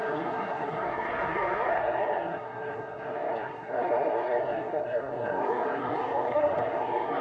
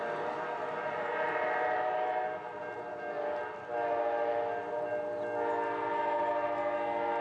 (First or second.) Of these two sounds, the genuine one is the second